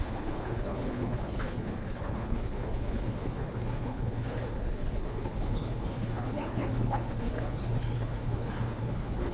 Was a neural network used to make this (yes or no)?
yes